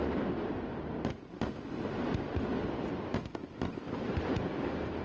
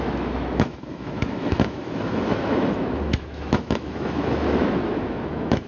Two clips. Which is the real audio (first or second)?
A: first